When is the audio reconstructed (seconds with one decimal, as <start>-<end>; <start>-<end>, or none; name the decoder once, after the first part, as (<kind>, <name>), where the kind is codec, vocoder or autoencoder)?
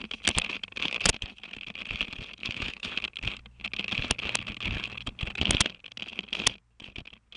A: 2.4-2.9 (autoencoder, DAC-VAE)